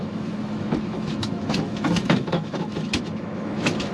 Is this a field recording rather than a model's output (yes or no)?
no